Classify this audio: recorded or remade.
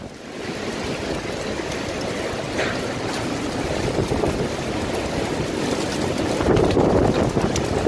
recorded